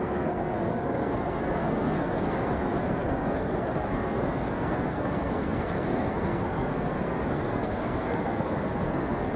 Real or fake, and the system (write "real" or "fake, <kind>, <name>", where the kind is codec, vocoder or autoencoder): fake, codec, SNAC